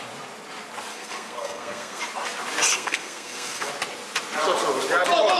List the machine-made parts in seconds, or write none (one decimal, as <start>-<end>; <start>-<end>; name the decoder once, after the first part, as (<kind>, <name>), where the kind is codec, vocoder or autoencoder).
0.9-2.0 (codec, SNAC); 2.7-3.7